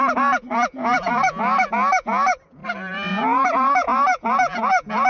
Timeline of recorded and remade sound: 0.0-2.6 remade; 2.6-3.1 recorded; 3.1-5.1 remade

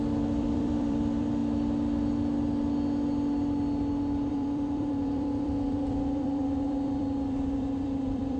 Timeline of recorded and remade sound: 0.0-1.4 remade; 1.4-4.3 recorded; 4.3-8.4 remade

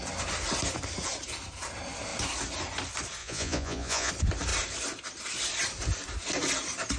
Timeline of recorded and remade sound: 0.0-3.2 recorded; 3.2-4.1 remade; 4.1-7.0 recorded